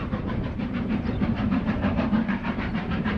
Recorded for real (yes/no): no